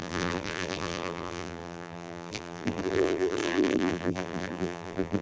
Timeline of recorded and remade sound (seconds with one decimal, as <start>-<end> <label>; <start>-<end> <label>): 0.0-5.2 remade